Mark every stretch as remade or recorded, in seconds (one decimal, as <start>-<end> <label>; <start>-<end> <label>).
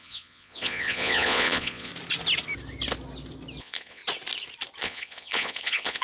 0.0-1.9 remade; 1.9-3.6 recorded; 3.6-4.0 remade; 4.0-4.8 recorded; 4.8-6.0 remade